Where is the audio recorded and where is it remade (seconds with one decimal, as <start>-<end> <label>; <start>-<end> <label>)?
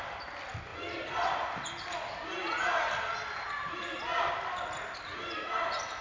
0.0-6.0 recorded